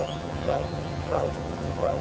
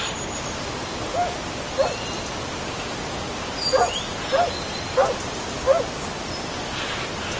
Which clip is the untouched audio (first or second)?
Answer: second